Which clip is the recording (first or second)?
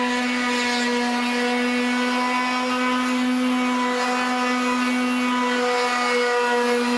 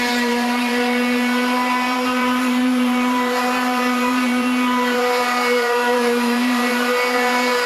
first